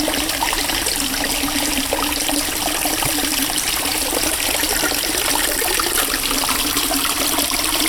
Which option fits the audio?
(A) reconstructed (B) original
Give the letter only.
B